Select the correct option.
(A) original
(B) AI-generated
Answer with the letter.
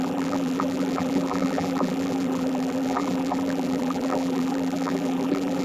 B